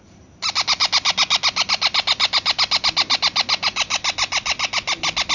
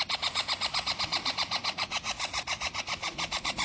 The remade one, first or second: second